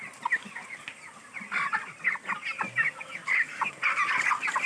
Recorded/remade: recorded